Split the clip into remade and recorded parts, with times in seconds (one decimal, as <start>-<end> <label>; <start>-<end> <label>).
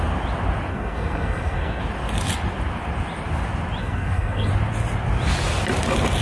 0.0-0.7 recorded; 0.7-1.8 remade; 1.8-3.8 recorded; 3.8-4.5 remade; 4.5-6.2 recorded